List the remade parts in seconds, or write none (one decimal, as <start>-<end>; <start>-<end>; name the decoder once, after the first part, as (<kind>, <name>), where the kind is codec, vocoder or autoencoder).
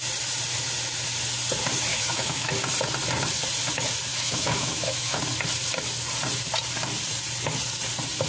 1.9-2.5 (autoencoder, DAC-VAE); 4.1-5.2